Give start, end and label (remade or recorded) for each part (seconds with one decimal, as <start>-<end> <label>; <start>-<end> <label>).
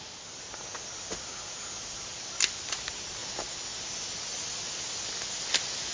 0.0-5.9 recorded